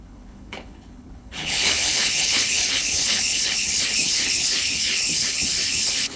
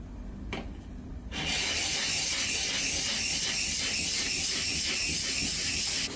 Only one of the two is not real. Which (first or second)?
first